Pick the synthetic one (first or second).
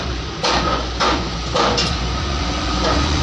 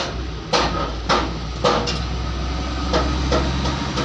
first